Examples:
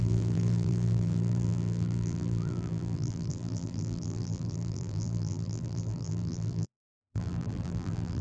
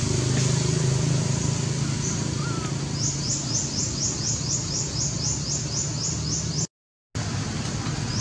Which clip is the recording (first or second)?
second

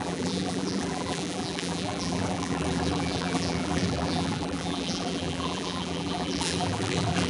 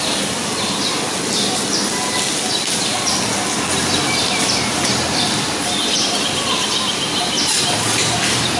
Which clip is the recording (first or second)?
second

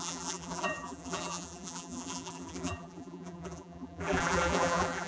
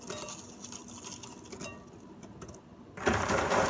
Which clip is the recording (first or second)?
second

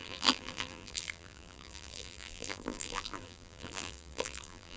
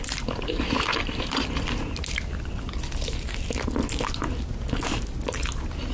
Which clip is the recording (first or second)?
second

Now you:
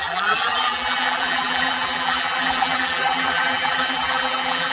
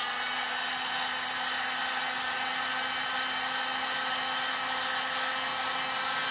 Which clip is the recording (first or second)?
second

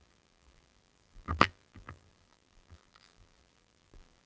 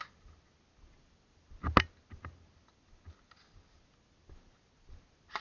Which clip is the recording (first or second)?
second